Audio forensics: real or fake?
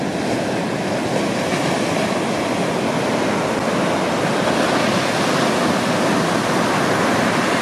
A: real